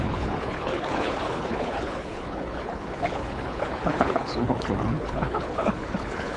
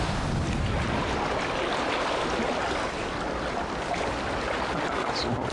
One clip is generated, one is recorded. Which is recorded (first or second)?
second